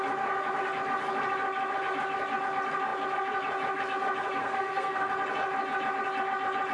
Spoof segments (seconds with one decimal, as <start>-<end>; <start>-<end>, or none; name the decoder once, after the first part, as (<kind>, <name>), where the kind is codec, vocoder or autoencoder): 4.4-5.1 (codec, SNAC)